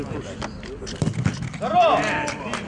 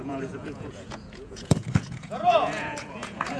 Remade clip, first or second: second